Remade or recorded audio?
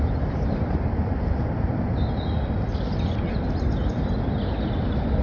recorded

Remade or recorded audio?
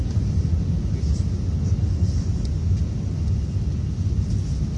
recorded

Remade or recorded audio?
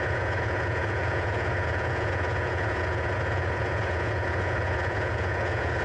remade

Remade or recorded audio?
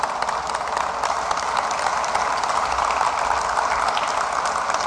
recorded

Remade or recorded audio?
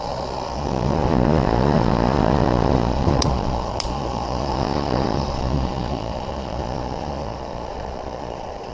remade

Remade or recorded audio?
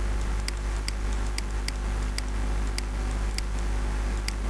recorded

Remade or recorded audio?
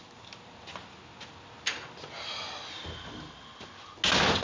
recorded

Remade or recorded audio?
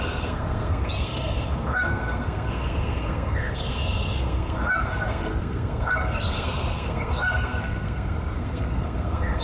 remade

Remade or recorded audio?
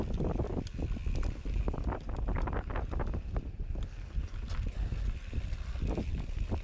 recorded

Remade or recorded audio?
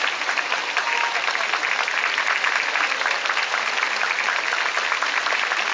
recorded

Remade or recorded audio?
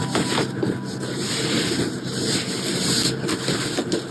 recorded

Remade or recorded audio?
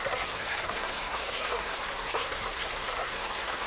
remade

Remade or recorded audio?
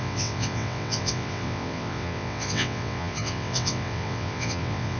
remade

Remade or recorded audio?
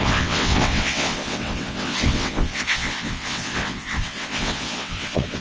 remade